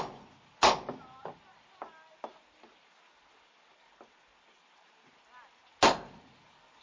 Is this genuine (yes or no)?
yes